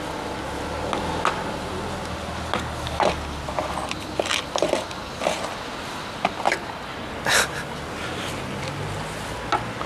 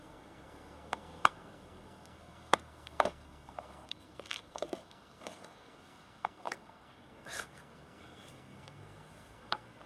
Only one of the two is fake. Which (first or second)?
second